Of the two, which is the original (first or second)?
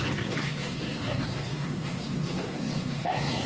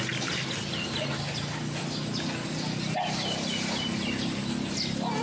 second